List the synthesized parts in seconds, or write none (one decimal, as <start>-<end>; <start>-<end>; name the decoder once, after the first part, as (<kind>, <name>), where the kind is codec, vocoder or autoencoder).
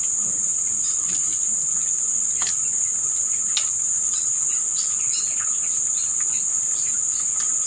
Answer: none